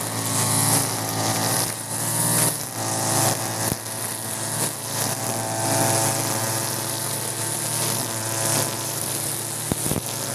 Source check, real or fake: real